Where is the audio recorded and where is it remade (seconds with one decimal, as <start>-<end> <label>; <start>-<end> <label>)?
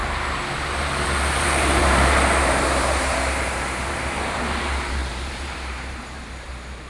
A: 0.0-0.8 recorded; 0.8-6.9 remade